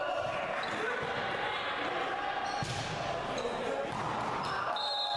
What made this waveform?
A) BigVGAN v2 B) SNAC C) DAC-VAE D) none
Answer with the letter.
D